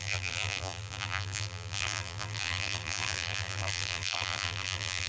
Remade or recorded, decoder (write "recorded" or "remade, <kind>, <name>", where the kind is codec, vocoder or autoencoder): remade, vocoder, BigVGAN v2